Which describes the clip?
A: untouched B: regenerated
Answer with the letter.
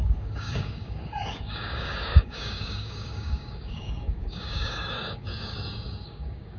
B